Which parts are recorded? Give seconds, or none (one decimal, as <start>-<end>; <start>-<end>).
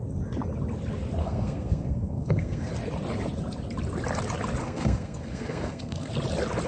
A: 0.0-1.2; 2.7-4.6; 6.1-6.7